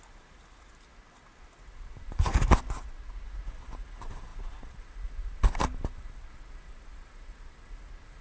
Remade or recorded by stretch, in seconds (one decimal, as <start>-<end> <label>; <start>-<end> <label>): 0.0-8.2 recorded

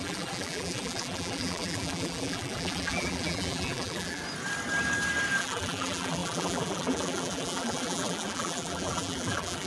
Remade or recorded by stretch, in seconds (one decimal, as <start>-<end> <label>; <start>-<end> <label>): 0.0-4.2 remade; 4.2-5.4 recorded; 5.4-9.7 remade